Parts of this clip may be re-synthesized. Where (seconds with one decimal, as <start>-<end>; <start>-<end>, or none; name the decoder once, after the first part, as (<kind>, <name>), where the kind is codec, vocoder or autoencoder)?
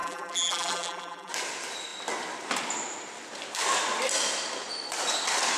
0.0-1.3 (vocoder, BigVGAN v2)